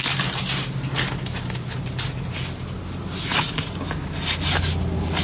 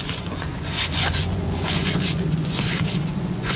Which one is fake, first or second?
second